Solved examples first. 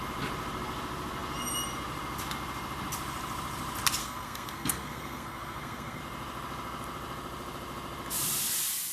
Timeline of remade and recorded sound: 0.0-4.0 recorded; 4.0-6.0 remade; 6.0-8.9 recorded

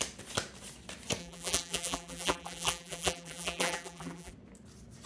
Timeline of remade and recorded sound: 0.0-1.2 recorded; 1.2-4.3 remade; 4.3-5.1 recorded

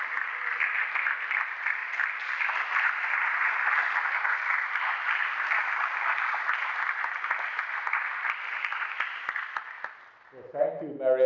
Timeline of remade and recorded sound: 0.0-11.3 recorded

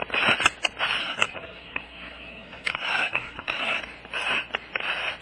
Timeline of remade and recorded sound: 0.0-1.0 recorded; 1.0-3.8 remade; 3.8-5.2 recorded

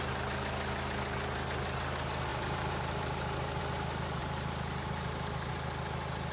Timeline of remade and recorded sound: 0.0-2.3 recorded; 2.3-3.6 remade; 3.6-4.2 recorded; 4.2-5.5 remade; 5.5-6.3 recorded

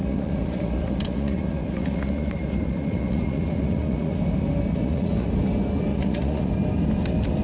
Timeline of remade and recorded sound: 0.0-4.2 remade; 4.2-4.7 recorded; 4.7-5.3 remade; 5.3-5.9 recorded; 5.9-6.5 remade; 6.5-7.4 recorded